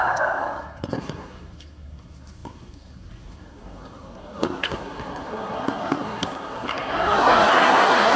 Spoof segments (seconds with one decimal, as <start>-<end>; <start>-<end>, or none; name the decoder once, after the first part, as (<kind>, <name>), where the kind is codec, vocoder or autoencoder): 0.0-8.2 (codec, SNAC)